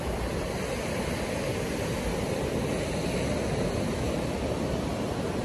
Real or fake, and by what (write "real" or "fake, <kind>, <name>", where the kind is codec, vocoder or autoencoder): real